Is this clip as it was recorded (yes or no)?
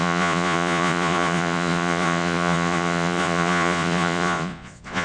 no